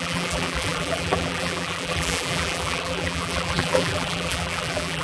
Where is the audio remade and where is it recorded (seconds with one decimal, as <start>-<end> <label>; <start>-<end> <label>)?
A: 0.0-5.0 remade